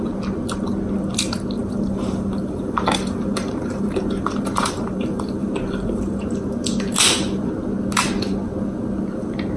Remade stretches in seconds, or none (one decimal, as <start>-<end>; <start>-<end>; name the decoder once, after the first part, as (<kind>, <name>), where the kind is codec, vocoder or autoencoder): 1.6-6.2 (vocoder, BigVGAN v2)